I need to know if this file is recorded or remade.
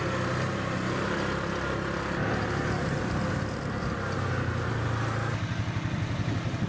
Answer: recorded